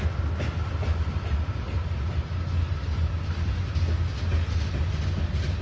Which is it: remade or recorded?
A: recorded